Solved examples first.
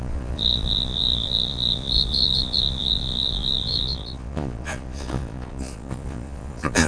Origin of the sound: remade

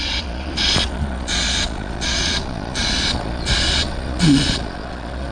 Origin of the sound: remade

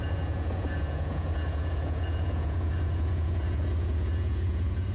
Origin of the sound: remade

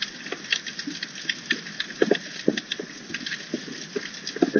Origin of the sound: recorded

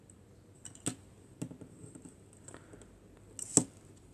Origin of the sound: recorded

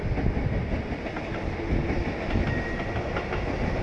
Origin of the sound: recorded